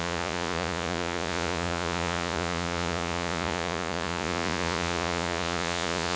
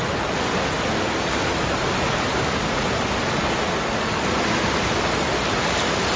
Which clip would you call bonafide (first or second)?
second